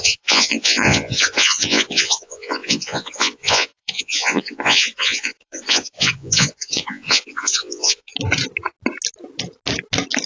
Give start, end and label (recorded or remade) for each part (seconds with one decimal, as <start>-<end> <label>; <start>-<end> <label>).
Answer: 0.0-8.1 remade; 8.1-10.3 recorded